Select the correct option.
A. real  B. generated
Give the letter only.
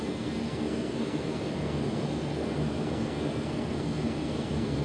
B